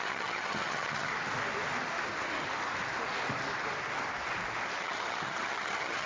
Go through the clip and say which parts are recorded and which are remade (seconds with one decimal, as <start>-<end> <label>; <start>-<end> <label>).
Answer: 0.0-1.1 remade; 1.1-4.8 recorded; 4.8-6.1 remade